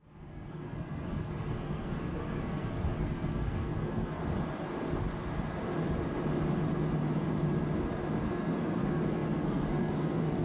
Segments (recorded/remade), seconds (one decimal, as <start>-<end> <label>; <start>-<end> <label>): 0.0-4.2 remade; 4.2-8.2 recorded; 8.2-10.4 remade